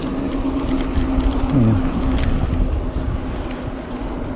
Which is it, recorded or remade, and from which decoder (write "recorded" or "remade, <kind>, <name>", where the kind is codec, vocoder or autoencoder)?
recorded